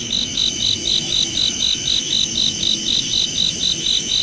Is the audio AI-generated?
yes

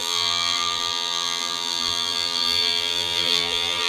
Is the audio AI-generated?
yes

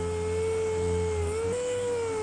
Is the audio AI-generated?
no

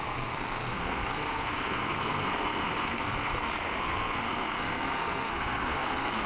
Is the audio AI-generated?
yes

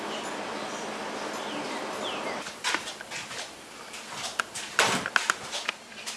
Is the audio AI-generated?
no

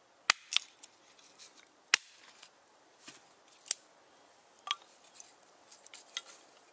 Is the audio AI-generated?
no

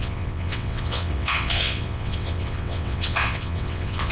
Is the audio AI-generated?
yes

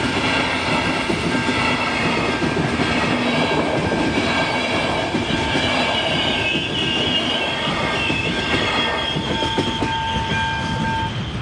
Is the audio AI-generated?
no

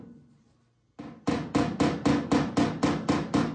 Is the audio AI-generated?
no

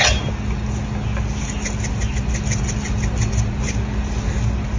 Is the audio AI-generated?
no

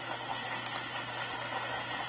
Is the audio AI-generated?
no